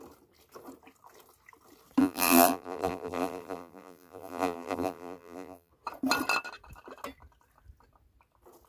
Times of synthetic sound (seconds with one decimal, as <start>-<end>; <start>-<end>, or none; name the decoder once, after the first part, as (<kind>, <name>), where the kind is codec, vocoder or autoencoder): 2.0-5.7 (vocoder, BigVGAN v2)